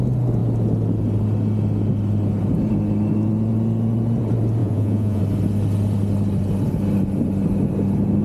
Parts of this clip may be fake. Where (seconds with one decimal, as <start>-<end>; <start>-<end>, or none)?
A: 4.6-5.2